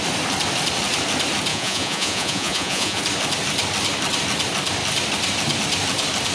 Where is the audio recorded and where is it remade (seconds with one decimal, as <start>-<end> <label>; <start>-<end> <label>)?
0.0-1.5 recorded; 1.5-3.0 remade; 3.0-6.3 recorded